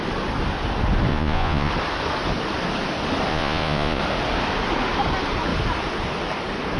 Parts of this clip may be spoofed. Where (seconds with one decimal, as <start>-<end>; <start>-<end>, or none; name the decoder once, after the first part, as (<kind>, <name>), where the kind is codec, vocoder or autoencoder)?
1.1-1.7 (vocoder, Vocos); 3.3-4.0